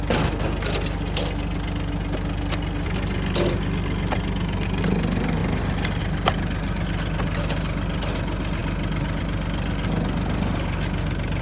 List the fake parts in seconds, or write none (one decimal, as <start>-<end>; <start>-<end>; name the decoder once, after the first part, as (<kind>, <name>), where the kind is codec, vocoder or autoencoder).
none

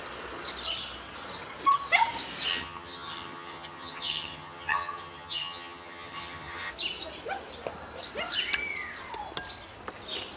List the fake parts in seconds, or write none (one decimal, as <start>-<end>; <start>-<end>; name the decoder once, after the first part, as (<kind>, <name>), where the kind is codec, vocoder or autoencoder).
2.5-6.7 (vocoder, HiFi-GAN)

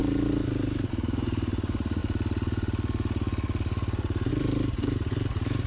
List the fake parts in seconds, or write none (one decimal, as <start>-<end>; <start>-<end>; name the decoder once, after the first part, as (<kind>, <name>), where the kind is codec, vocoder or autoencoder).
0.9-2.0 (vocoder, BigVGAN v2); 4.3-5.7

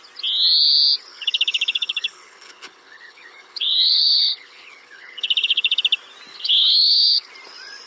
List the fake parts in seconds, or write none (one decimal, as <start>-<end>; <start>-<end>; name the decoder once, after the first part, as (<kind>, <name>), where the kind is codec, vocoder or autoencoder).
1.1-5.8 (codec, HILCodec); 6.3-7.3

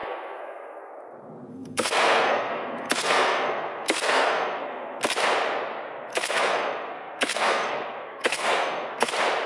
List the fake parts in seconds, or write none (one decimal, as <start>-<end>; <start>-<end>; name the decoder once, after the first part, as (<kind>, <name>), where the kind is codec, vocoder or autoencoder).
0.0-0.9 (codec, SNAC); 1.5-5.0; 6.1-9.1

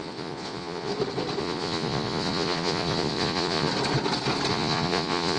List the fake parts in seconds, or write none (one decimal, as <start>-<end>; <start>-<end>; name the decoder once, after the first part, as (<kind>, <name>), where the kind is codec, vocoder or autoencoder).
0.0-0.9 (vocoder, Vocos); 1.4-3.7; 4.5-5.4